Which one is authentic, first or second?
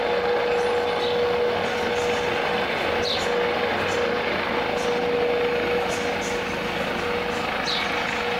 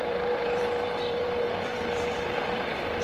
first